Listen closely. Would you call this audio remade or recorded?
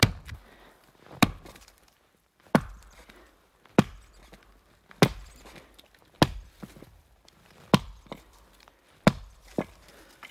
remade